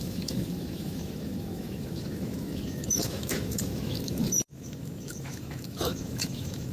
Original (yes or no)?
no